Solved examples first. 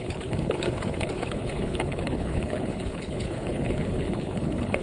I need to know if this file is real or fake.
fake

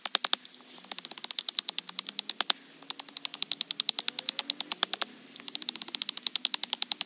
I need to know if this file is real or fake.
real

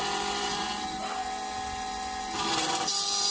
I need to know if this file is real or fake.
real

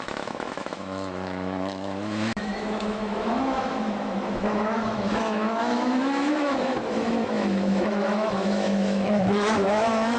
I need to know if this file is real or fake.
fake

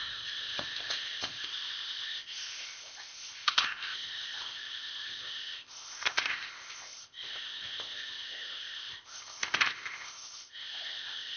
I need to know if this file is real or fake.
fake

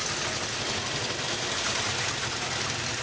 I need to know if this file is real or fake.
real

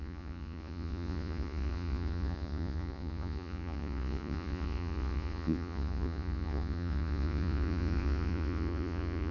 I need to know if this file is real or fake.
fake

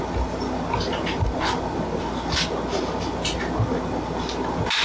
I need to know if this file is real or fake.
real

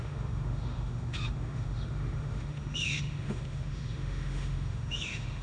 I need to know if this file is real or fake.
fake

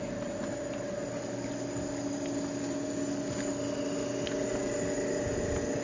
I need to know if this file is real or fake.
real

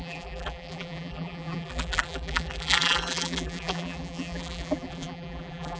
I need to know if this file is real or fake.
fake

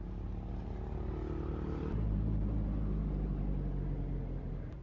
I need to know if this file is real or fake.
real